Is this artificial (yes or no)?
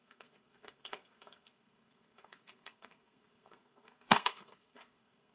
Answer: yes